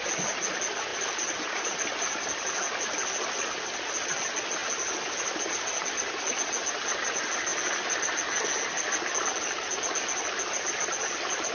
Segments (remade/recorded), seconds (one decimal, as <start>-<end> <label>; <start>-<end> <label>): 0.0-11.5 recorded

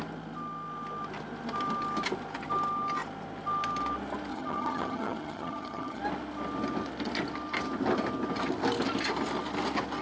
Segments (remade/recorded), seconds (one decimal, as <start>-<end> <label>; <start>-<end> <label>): 0.0-4.3 recorded; 4.3-6.0 remade; 6.0-10.0 recorded

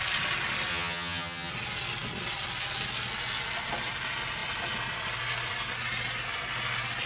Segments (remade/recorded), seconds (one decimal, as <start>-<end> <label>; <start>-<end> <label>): 0.0-0.7 recorded; 0.7-1.5 remade; 1.5-7.1 recorded

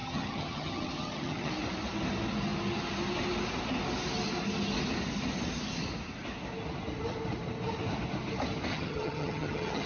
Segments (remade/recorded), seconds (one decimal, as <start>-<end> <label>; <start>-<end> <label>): 0.0-1.5 remade; 1.5-8.7 recorded; 8.7-9.9 remade

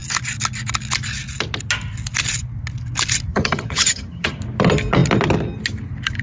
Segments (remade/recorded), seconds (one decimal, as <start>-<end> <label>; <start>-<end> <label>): 0.0-3.3 recorded; 3.3-4.4 remade; 4.4-6.2 recorded